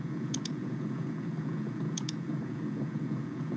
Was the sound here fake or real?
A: fake